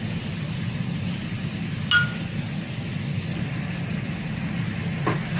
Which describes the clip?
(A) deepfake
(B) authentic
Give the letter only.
B